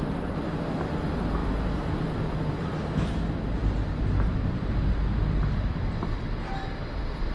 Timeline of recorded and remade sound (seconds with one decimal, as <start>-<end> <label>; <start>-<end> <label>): 0.0-7.3 recorded